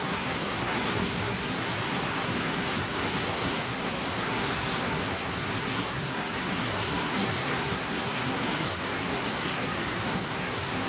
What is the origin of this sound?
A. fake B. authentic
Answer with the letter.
A